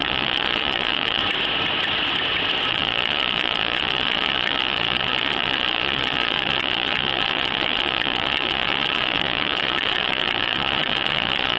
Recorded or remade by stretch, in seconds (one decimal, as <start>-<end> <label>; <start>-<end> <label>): 0.0-1.2 remade; 1.2-2.7 recorded; 2.7-11.6 remade